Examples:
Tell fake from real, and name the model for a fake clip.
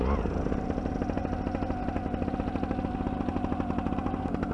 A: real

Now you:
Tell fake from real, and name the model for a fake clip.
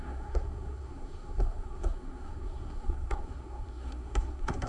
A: fake, codec, SNAC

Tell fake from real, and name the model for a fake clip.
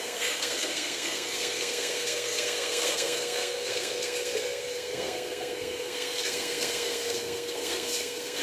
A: fake, codec, SNAC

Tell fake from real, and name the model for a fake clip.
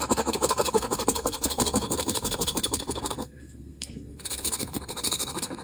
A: fake, codec, SNAC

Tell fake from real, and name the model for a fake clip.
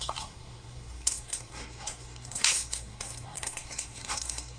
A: fake, codec, SNAC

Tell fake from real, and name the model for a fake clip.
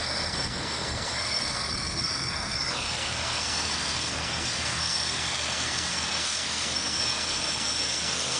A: fake, codec, SNAC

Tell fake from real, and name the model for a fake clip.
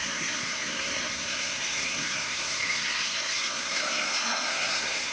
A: fake, codec, SNAC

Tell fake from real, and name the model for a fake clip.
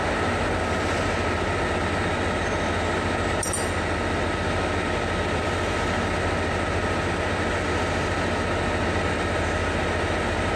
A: real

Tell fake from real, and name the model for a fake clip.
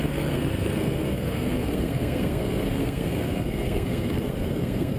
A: fake, codec, SNAC